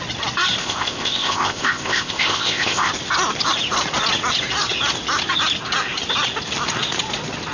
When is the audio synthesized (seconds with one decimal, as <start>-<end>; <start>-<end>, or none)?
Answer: 0.6-2.9

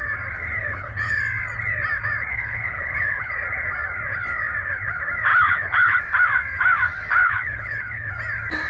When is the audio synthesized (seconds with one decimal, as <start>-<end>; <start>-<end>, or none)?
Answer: 0.6-1.2; 2.3-3.3; 5.3-6.0; 7.2-8.1

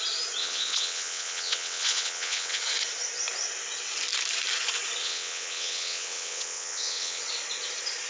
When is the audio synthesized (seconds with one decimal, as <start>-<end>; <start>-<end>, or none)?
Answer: 0.4-2.6; 5.0-7.2